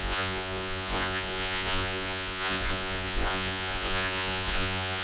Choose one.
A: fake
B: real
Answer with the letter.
A